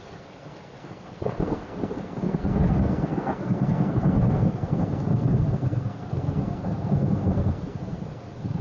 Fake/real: fake